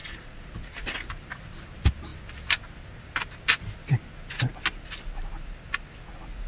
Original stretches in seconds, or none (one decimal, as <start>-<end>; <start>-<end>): 0.5-6.5